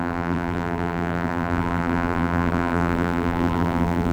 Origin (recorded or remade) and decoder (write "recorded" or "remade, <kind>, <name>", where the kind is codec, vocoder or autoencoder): remade, vocoder, BigVGAN v2